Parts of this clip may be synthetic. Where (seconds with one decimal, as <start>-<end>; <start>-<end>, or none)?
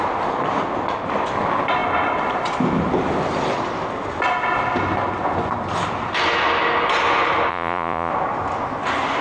7.5-8.1